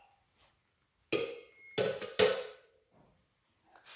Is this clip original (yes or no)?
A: yes